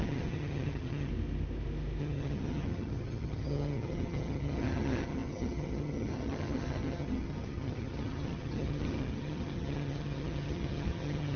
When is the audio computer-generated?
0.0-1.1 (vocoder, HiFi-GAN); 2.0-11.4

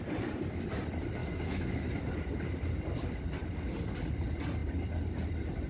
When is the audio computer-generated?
1.2-1.9 (autoencoder, DAC-VAE)

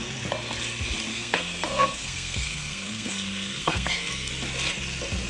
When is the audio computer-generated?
1.1-4.3 (codec, SNAC)

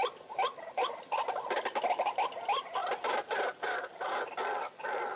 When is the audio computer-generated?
2.8-4.2 (vocoder, BigVGAN v2)

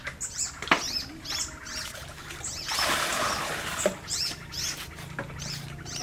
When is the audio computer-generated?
none